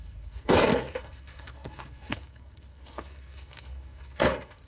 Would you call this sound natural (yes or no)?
no